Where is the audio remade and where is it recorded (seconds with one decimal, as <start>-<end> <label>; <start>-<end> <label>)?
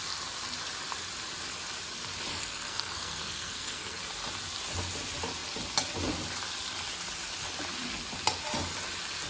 0.0-2.3 recorded; 2.3-4.0 remade; 4.0-9.3 recorded